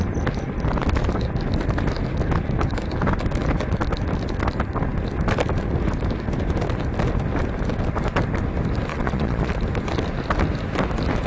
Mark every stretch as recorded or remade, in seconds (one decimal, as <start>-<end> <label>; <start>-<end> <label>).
0.0-8.9 recorded; 8.9-9.5 remade; 9.5-11.3 recorded